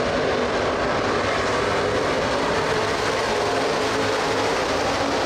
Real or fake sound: fake